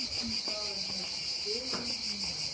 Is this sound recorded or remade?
recorded